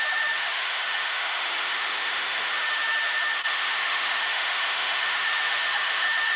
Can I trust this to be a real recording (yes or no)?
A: no